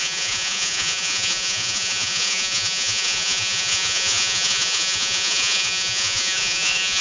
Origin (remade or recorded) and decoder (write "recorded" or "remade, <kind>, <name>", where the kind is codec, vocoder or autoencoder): remade, vocoder, Vocos